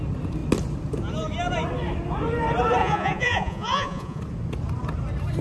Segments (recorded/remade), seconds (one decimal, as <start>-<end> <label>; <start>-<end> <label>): 0.0-2.8 recorded; 2.8-4.2 remade; 4.2-5.4 recorded